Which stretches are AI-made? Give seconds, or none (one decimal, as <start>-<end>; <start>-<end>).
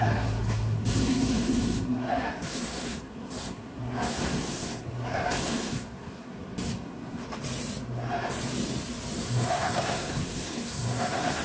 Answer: 0.0-7.2; 9.2-11.4